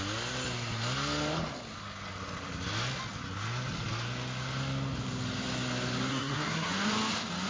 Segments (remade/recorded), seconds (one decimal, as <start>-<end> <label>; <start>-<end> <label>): 0.0-6.1 recorded; 6.1-6.7 remade; 6.7-7.5 recorded